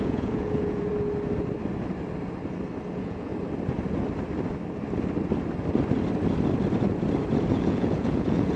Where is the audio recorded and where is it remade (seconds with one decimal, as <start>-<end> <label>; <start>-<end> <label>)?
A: 0.0-0.9 remade; 0.9-2.9 recorded; 2.9-3.3 remade; 3.3-7.5 recorded; 7.5-8.6 remade